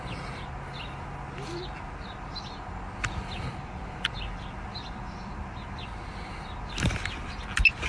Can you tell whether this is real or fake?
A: real